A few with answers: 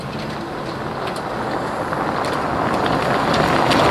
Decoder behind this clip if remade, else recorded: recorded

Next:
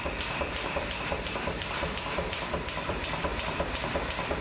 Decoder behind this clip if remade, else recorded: remade, vocoder, BigVGAN v2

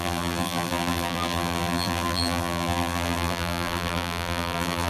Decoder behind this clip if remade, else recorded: remade, vocoder, BigVGAN v2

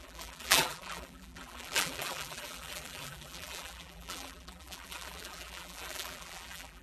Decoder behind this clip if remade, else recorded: remade, vocoder, BigVGAN v2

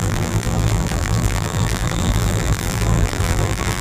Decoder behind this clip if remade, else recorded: remade, vocoder, BigVGAN v2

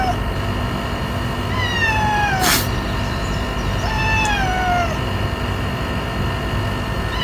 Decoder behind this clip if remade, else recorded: recorded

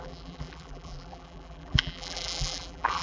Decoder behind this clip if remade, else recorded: remade, vocoder, BigVGAN v2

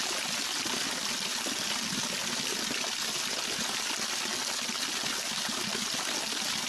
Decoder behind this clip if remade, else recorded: recorded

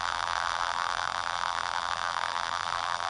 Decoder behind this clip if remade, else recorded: remade, vocoder, BigVGAN v2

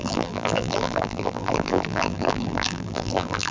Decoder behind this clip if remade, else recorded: remade, vocoder, BigVGAN v2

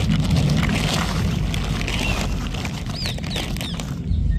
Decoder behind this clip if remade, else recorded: recorded